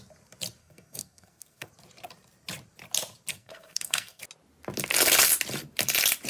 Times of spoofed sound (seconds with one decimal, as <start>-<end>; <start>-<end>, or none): 0.6-1.7; 3.3-4.2